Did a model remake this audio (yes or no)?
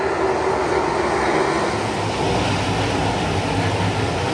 no